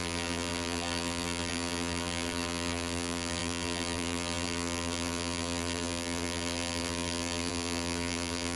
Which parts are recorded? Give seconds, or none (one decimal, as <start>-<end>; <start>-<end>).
none